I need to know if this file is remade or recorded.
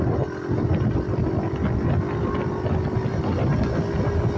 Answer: recorded